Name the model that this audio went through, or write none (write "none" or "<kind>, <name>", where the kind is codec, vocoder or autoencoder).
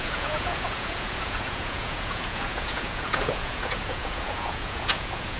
vocoder, Vocos